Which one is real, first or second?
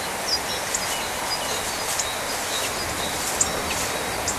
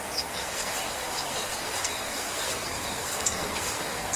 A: first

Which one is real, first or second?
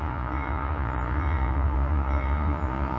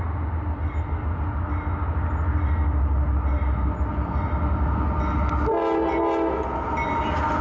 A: second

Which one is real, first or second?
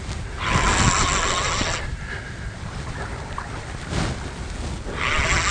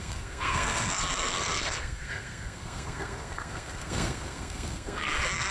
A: first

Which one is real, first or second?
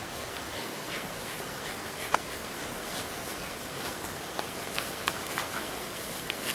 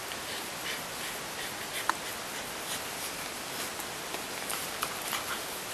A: second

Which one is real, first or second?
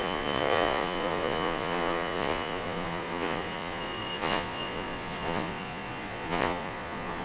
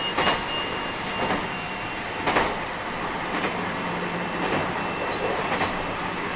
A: second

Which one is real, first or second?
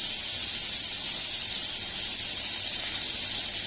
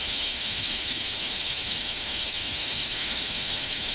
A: first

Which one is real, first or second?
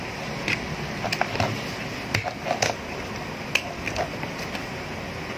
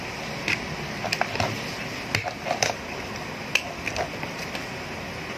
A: first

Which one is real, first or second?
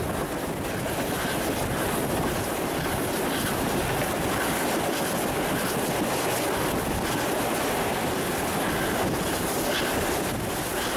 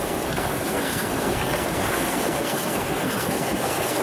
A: first